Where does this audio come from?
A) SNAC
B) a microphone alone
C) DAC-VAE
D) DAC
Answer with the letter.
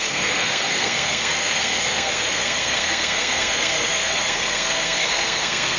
A